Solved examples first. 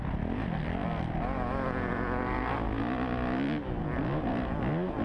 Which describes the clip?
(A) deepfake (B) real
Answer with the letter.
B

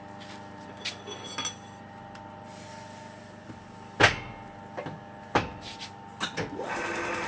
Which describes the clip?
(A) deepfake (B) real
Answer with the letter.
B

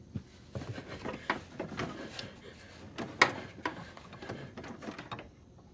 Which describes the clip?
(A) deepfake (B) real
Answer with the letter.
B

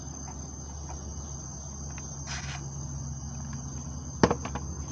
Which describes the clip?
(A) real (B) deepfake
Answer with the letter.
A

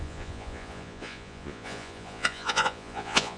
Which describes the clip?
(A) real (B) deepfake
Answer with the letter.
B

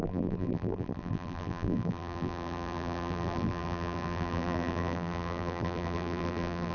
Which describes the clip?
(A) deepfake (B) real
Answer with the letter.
A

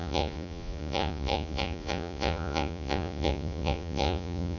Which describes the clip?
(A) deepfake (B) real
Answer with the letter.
A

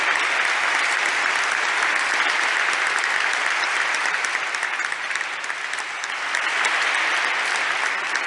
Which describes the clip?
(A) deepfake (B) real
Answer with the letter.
B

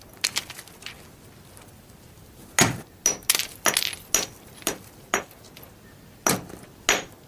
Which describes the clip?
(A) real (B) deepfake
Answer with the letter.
A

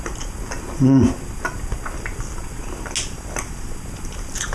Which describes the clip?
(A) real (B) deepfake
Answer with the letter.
A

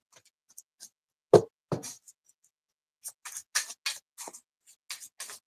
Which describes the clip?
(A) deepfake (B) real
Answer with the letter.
B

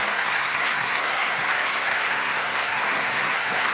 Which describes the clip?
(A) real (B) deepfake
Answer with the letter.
B